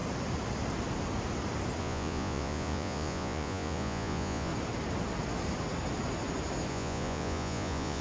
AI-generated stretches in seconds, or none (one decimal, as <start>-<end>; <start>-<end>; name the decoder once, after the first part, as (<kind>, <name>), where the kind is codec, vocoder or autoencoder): 1.8-4.5 (vocoder, Vocos); 6.7-8.0